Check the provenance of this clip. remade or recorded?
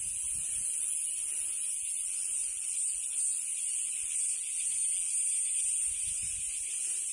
recorded